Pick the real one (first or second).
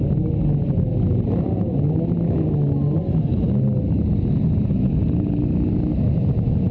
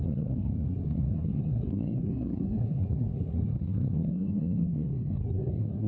first